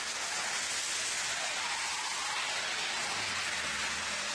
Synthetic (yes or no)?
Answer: no